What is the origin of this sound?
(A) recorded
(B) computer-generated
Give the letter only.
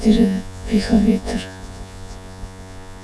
B